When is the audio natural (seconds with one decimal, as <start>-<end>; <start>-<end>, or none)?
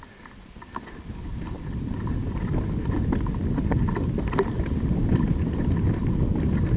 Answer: 2.2-4.5